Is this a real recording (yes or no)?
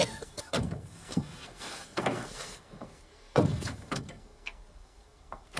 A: no